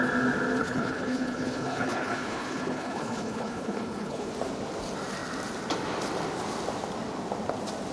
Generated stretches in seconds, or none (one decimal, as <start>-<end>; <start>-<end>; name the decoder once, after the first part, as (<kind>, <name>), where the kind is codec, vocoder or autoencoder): 0.6-4.3 (codec, HILCodec)